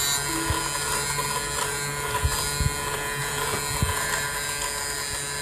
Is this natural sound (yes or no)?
yes